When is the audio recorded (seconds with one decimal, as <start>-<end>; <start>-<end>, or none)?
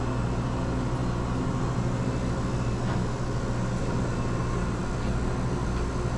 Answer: 0.0-3.8; 4.8-6.2